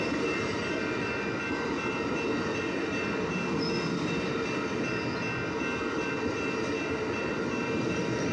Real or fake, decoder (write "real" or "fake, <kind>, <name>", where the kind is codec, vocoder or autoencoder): real